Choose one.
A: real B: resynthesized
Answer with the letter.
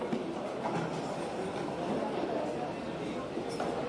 A